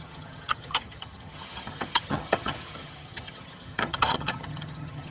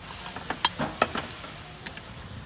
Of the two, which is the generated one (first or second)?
first